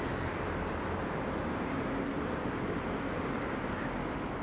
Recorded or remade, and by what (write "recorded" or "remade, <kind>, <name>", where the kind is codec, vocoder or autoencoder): recorded